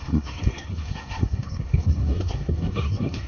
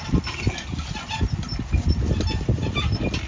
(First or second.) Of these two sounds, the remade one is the first